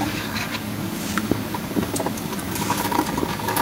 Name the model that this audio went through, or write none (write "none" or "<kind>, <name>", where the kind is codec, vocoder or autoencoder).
codec, DAC